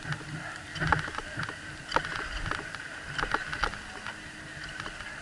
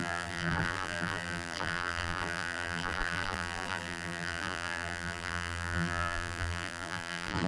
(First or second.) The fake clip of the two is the second